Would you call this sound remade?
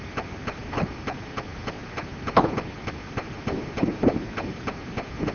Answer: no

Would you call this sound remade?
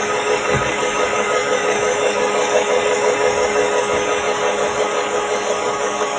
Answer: yes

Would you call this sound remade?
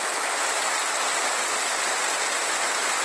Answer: no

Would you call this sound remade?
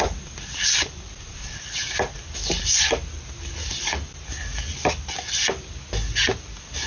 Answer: no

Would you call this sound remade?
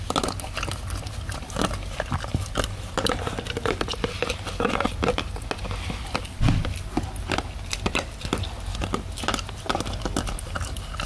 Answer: no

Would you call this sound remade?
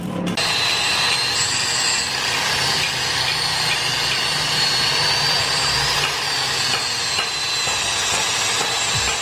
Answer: no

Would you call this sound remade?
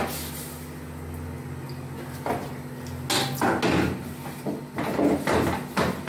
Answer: no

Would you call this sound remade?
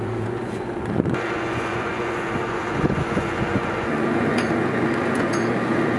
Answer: yes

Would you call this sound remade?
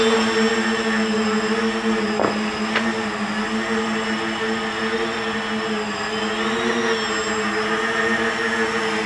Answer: no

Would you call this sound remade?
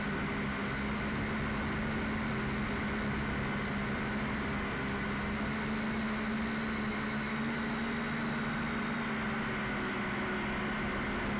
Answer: no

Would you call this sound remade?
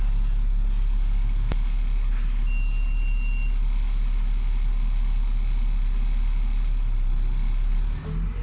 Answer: no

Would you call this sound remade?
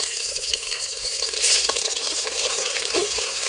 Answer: yes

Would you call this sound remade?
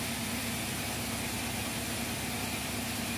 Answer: no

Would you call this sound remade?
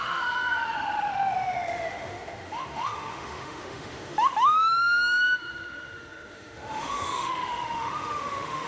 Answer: yes